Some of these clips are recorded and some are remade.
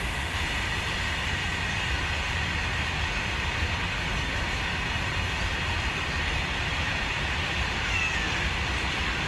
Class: recorded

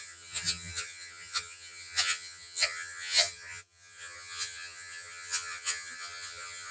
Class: remade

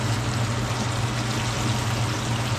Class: recorded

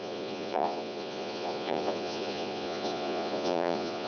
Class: remade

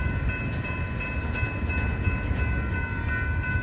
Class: recorded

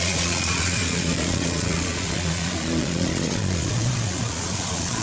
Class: remade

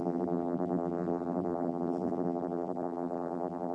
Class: remade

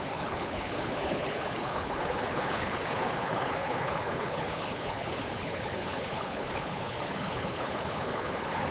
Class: remade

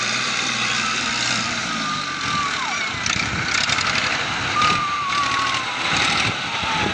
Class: remade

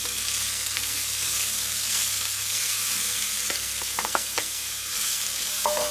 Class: remade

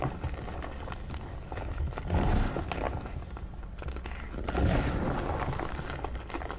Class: recorded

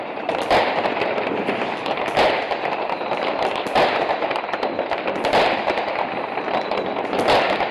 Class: recorded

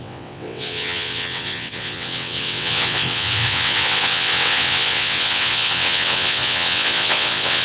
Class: remade